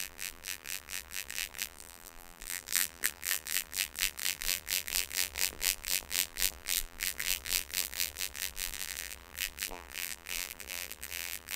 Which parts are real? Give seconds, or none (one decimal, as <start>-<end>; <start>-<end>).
none

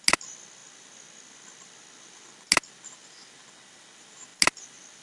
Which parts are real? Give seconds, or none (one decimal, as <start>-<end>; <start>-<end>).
0.0-5.0

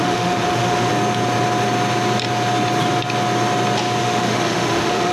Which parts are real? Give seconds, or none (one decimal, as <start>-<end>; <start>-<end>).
0.9-4.0

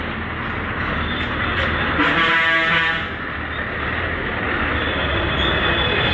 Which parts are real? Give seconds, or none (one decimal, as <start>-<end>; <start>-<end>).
0.0-6.1

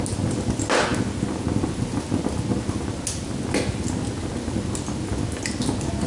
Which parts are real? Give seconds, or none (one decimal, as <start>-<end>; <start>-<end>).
0.0-6.1

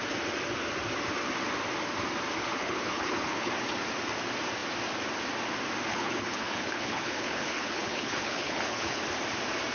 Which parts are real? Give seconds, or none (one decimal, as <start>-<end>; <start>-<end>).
0.0-2.4; 3.5-5.9; 9.0-9.7

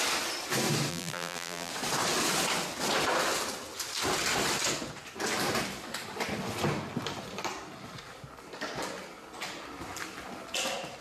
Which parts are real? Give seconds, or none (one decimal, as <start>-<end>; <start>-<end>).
0.0-0.9; 1.7-11.0